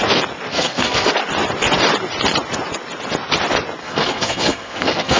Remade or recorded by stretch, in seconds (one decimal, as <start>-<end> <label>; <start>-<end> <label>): 0.0-0.5 recorded; 0.5-1.1 remade; 1.1-3.8 recorded; 3.8-5.2 remade

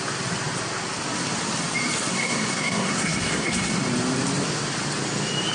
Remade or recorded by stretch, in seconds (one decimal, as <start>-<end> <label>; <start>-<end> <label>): 0.0-2.1 recorded; 2.1-3.7 remade; 3.7-5.5 recorded

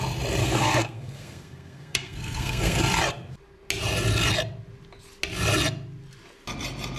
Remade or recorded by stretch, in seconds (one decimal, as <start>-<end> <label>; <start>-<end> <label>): 0.0-0.4 recorded; 0.4-2.8 remade; 2.8-7.0 recorded

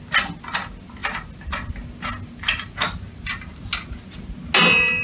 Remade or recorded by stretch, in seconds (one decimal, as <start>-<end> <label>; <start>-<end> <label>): 0.0-5.0 recorded